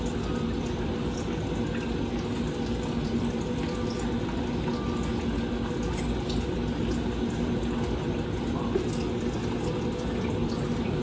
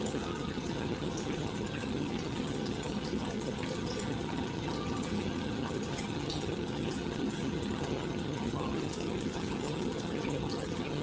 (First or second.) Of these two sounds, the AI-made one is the second